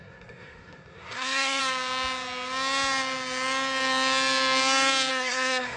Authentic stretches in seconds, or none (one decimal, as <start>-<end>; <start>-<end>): 1.6-5.1